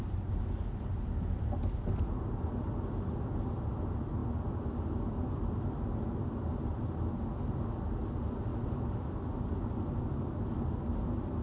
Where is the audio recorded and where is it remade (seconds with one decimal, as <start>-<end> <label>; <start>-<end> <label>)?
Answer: 0.0-11.4 recorded